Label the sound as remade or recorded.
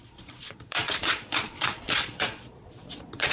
remade